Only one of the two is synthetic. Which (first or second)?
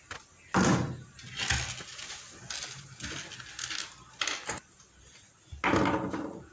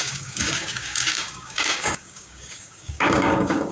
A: second